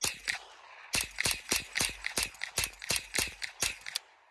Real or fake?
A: real